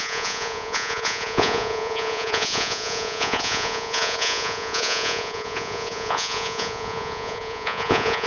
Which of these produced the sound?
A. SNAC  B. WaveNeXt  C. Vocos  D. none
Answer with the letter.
C